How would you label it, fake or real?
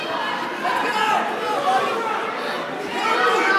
real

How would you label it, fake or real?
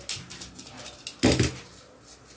real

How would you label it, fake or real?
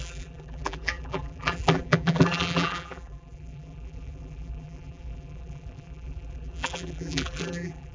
fake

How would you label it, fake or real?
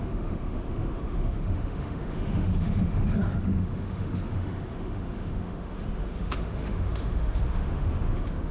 fake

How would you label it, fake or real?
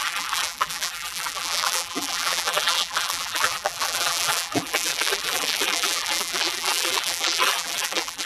fake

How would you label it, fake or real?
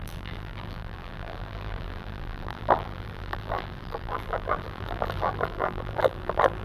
fake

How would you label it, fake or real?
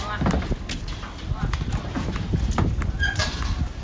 real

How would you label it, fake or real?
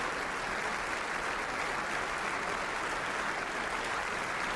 real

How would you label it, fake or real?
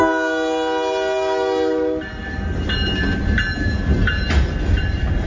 real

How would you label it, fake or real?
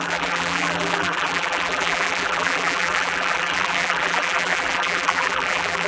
fake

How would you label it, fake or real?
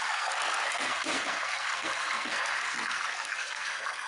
fake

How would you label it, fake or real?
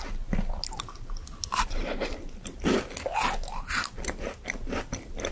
real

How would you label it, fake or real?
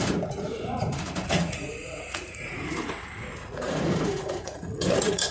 fake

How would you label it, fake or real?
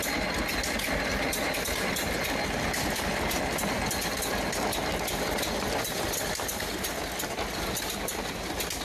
real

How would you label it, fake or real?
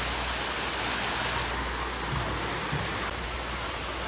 real